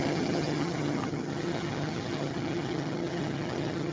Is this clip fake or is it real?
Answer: fake